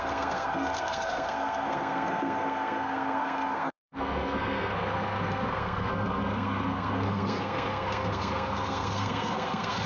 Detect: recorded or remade remade